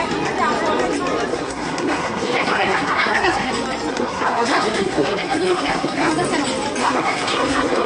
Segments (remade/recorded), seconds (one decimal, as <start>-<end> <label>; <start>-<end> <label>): 0.0-1.3 recorded; 1.3-3.5 remade; 3.5-3.9 recorded; 3.9-6.1 remade; 6.1-6.8 recorded; 6.8-7.9 remade